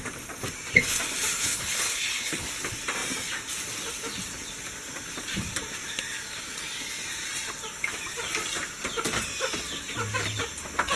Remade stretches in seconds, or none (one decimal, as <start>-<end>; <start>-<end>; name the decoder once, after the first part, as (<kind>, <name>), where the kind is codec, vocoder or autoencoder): 1.3-2.5 (codec, HILCodec)